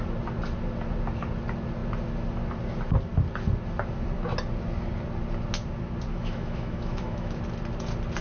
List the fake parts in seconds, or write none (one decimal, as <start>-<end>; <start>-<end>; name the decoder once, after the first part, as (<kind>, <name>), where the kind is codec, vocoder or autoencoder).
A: 6.1-7.4 (autoencoder, DAC-VAE)